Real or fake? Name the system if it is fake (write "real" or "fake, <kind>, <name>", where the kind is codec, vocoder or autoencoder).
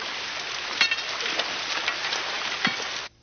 real